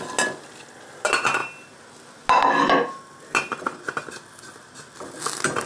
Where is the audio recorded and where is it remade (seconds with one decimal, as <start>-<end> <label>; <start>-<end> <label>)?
0.0-5.7 recorded